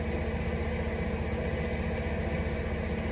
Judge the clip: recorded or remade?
recorded